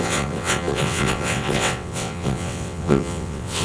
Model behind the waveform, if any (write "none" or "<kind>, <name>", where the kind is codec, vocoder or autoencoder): vocoder, WaveNeXt